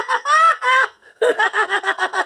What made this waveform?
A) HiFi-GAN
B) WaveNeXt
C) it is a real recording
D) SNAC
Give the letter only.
D